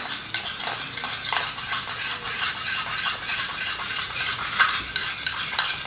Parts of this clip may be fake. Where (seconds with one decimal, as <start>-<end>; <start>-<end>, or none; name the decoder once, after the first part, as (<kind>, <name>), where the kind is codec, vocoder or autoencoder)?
3.3-4.8 (vocoder, Vocos)